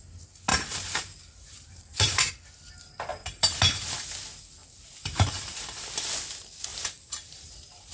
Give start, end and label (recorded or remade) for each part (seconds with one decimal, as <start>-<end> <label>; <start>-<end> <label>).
0.0-0.5 recorded; 0.5-2.3 remade; 2.3-3.1 recorded; 3.1-3.7 remade; 3.7-4.6 recorded; 4.6-5.8 remade; 5.8-6.7 recorded; 6.7-7.5 remade; 7.5-7.9 recorded